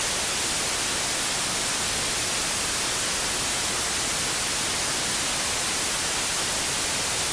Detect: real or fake real